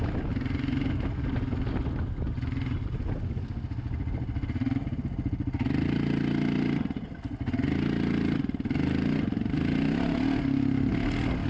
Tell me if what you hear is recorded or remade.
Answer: recorded